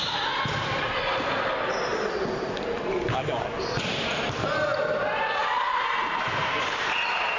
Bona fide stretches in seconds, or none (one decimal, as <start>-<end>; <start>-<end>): 1.3-5.4